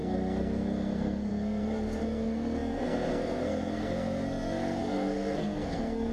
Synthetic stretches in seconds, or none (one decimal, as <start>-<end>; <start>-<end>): 0.0-6.1